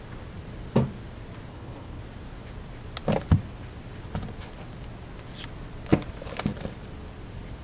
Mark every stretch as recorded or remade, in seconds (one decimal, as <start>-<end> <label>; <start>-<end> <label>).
0.0-1.5 recorded; 1.5-2.0 remade; 2.0-7.6 recorded